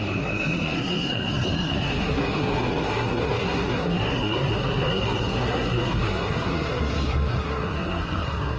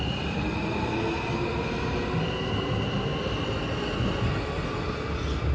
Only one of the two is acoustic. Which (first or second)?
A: second